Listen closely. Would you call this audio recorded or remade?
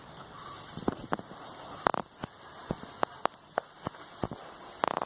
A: recorded